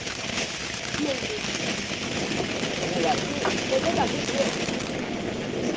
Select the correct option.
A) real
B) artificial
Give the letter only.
A